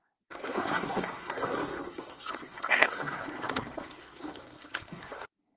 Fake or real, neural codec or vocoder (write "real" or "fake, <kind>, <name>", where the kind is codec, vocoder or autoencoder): fake, codec, SNAC